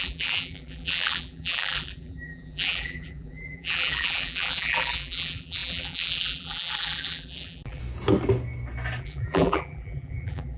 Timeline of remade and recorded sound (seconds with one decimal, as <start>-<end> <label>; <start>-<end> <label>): 0.0-7.8 remade; 7.8-9.0 recorded; 9.0-10.6 remade